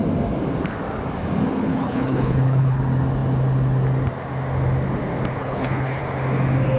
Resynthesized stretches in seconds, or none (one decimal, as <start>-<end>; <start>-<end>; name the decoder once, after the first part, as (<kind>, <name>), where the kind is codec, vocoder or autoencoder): 1.6-2.8 (codec, HILCodec); 5.4-6.0

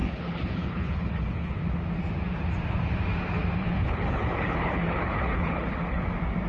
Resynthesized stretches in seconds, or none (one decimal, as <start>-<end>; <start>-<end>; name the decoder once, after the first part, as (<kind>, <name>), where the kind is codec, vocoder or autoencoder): 0.0-1.6 (codec, HILCodec); 3.6-6.0